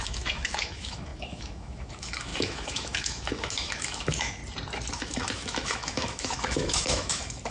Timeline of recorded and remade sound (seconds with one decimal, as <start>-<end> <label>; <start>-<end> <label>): 0.0-4.4 remade; 4.4-4.9 recorded; 4.9-7.5 remade